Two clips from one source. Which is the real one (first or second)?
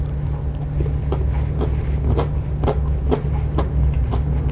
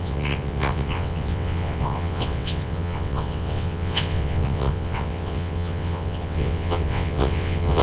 first